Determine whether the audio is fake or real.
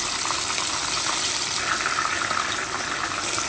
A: real